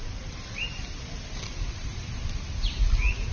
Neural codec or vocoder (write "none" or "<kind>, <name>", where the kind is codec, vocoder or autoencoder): none